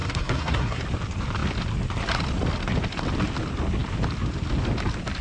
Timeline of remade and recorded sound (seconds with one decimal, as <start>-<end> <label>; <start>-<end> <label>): 0.0-0.8 remade; 0.8-5.2 recorded